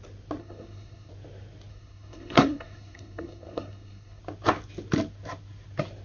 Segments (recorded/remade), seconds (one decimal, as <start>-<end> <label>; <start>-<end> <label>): 0.0-0.4 recorded; 0.4-1.1 remade; 1.1-1.7 recorded; 1.7-4.2 remade; 4.2-6.0 recorded